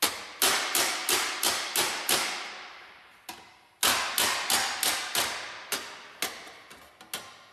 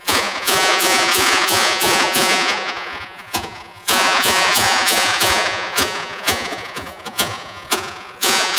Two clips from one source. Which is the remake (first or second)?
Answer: second